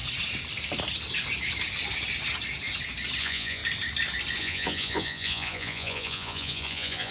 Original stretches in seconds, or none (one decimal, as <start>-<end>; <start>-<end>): 0.0-3.2; 3.6-4.4